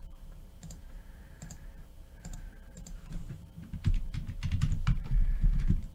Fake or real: fake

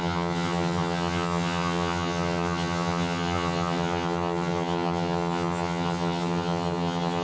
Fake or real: fake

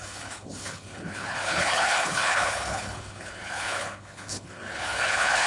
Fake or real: fake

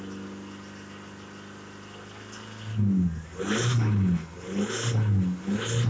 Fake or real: real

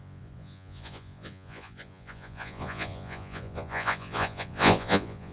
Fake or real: fake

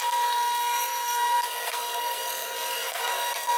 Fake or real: fake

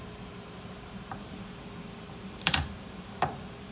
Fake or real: fake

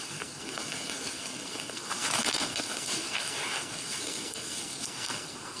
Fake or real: fake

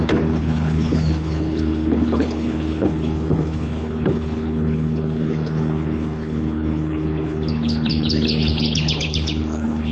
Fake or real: fake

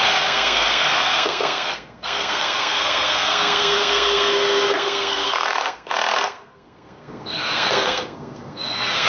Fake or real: fake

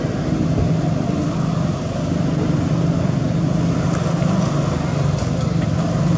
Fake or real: real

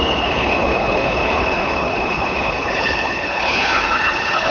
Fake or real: fake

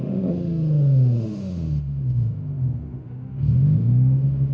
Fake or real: fake